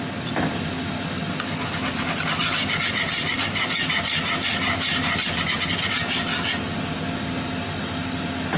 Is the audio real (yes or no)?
yes